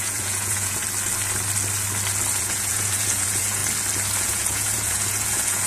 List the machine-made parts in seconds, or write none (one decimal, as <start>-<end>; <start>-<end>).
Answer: 0.0-0.8; 2.4-3.6; 4.2-5.7